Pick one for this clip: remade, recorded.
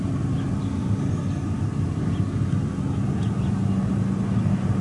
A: recorded